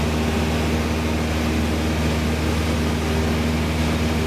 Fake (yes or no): no